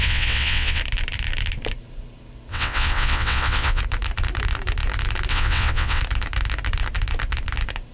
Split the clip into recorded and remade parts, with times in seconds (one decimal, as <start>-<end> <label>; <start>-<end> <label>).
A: 0.0-0.8 remade; 0.8-2.5 recorded; 2.5-3.8 remade; 3.8-5.3 recorded; 5.3-6.0 remade; 6.0-7.9 recorded